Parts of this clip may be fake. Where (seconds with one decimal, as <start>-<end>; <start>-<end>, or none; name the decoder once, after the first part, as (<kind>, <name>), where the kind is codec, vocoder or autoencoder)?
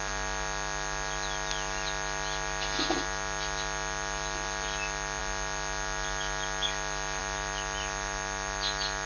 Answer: none